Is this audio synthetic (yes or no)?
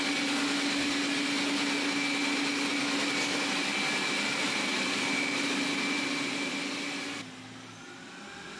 no